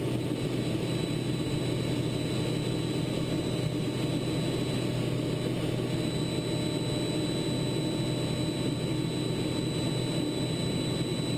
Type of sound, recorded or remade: recorded